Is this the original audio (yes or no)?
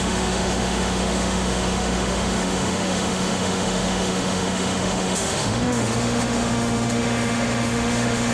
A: no